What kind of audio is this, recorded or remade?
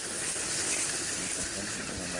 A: recorded